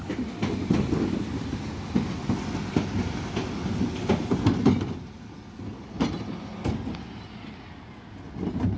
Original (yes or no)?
yes